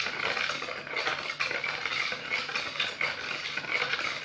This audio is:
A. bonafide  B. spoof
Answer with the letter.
A